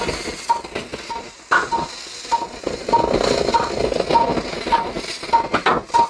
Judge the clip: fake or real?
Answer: real